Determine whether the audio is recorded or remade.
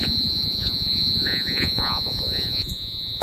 remade